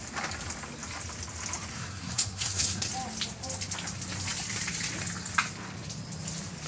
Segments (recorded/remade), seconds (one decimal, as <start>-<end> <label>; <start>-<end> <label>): 0.0-1.7 recorded; 1.7-2.9 remade; 2.9-6.7 recorded